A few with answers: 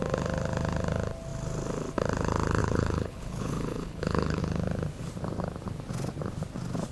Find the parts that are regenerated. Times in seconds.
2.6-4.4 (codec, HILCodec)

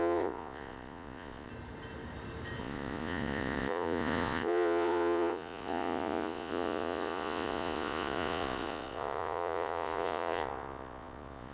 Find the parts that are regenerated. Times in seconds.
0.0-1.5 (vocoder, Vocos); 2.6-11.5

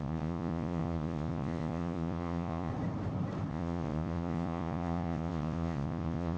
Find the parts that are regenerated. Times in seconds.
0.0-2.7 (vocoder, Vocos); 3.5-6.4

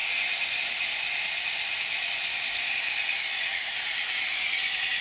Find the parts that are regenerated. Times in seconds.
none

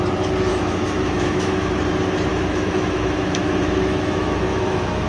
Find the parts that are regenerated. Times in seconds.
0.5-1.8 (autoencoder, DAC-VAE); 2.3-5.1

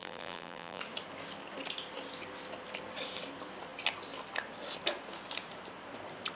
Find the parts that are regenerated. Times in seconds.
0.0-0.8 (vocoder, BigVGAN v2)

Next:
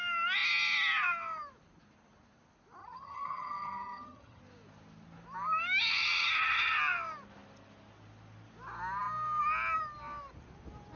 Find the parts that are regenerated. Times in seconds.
2.8-4.4 (vocoder, HiFi-GAN); 5.8-6.8

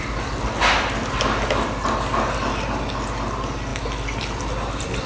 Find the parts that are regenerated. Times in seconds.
3.7-5.1 (vocoder, BigVGAN v2)